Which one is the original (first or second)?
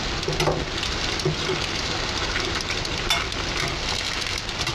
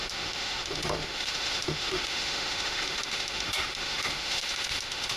first